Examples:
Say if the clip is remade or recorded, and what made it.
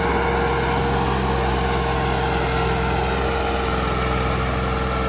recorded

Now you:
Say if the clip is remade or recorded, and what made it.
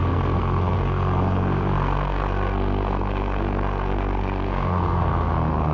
remade, codec, SNAC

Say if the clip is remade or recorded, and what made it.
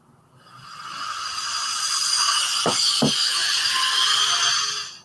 recorded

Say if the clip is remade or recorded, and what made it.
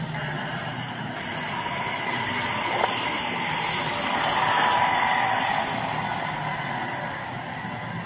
recorded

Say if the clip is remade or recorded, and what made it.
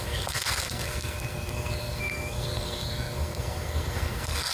remade, codec, SNAC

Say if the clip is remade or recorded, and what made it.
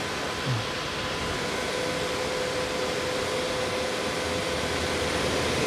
recorded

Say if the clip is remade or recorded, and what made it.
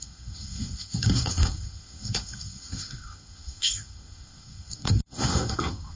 remade, codec, SNAC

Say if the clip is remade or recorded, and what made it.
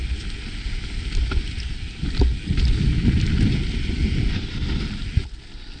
recorded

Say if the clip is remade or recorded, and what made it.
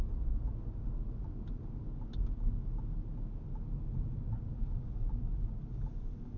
recorded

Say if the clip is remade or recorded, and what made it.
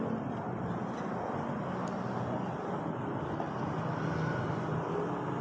recorded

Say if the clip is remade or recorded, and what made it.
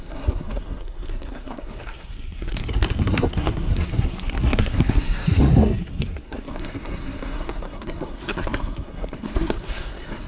remade, codec, SNAC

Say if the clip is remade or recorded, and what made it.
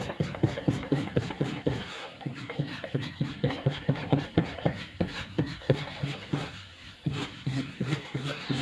remade, codec, SNAC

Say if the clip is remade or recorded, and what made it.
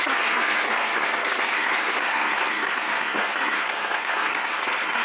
remade, codec, SNAC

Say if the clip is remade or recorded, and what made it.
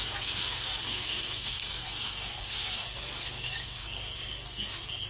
remade, codec, SNAC